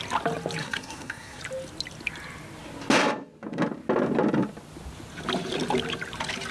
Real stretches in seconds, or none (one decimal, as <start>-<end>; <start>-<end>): 0.0-0.6; 1.4-6.5